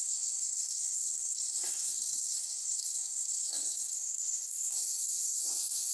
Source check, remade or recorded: remade